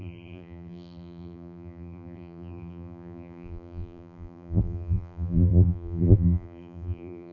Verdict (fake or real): fake